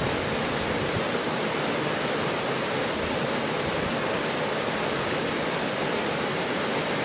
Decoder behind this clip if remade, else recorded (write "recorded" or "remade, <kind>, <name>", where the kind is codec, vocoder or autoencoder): recorded